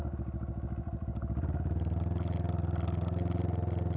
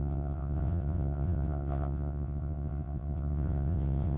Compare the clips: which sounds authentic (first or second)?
first